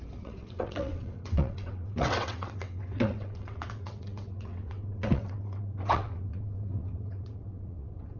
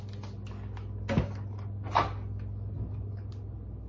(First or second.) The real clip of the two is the second